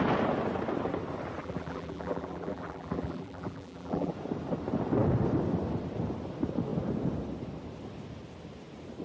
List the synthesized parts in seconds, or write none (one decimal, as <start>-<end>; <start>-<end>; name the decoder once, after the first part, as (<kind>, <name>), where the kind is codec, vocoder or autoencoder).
1.4-4.1 (vocoder, BigVGAN v2)